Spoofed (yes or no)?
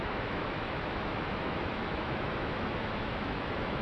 yes